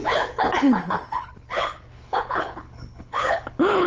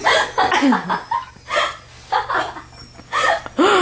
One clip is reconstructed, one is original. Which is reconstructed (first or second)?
first